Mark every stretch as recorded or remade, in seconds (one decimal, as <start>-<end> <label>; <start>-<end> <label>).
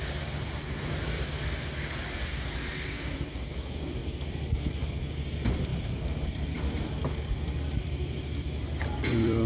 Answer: 0.0-4.0 recorded; 4.0-4.6 remade; 4.6-5.7 recorded; 5.7-9.5 remade